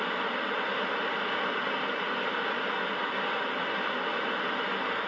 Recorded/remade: recorded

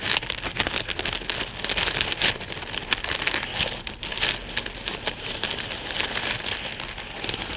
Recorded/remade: recorded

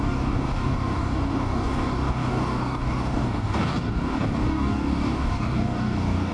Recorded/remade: remade